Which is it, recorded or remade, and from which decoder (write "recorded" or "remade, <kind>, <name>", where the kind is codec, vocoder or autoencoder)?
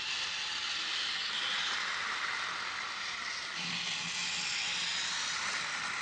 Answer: recorded